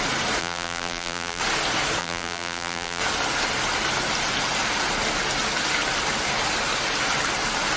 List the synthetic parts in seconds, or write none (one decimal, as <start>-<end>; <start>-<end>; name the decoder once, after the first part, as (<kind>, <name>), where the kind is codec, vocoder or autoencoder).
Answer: 0.4-1.4 (vocoder, BigVGAN v2); 2.0-3.0